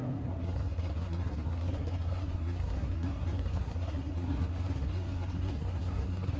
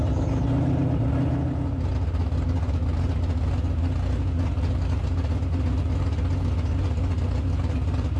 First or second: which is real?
second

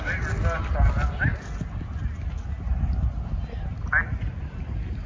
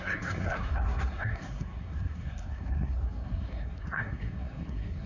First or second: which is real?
first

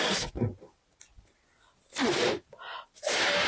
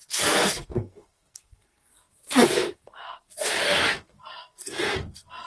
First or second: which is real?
first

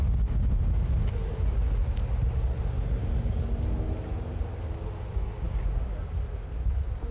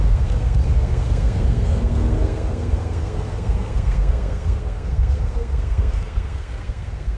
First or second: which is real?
first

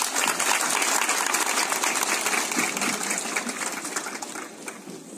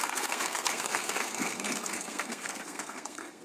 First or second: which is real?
first